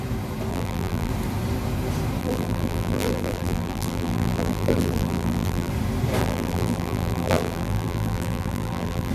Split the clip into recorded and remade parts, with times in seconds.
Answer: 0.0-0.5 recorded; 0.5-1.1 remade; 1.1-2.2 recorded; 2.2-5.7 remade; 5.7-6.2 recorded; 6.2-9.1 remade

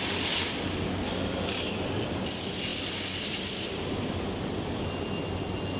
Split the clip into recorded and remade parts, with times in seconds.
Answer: 0.0-5.8 recorded

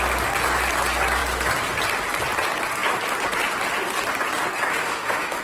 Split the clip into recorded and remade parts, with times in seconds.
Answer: 0.0-4.7 recorded; 4.7-5.4 remade

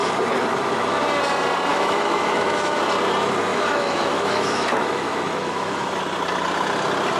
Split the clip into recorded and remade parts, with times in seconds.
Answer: 0.0-1.7 recorded; 1.7-2.8 remade; 2.8-3.5 recorded; 3.5-6.0 remade; 6.0-7.2 recorded

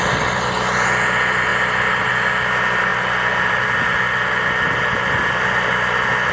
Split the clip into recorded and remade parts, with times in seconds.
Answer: 0.0-6.3 recorded

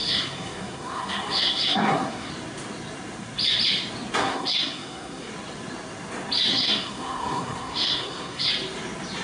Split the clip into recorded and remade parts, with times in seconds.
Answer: 0.0-2.3 remade; 2.3-4.2 recorded; 4.2-5.3 remade; 5.3-6.5 recorded; 6.5-8.5 remade; 8.5-9.2 recorded